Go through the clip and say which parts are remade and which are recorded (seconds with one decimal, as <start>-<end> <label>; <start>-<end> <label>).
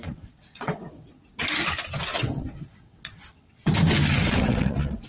0.0-1.1 remade; 1.1-2.1 recorded; 2.1-3.7 remade; 3.7-4.2 recorded; 4.2-5.1 remade